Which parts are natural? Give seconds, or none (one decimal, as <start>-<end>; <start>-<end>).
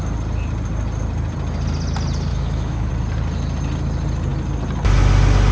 0.0-2.3; 2.9-5.5